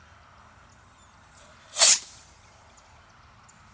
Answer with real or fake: real